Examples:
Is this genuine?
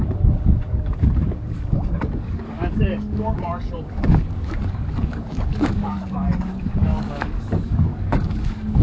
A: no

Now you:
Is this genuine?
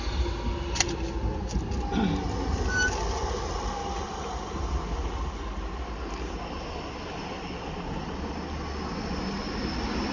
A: yes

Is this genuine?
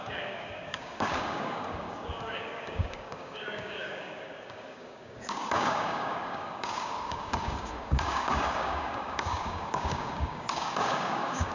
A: no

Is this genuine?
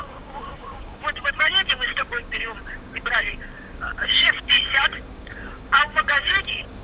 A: no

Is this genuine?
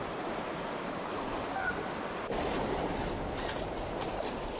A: yes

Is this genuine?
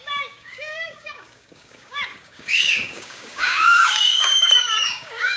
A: no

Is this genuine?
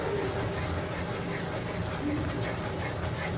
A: yes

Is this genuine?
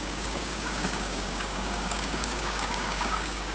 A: no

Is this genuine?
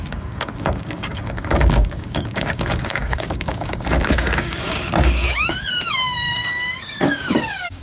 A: no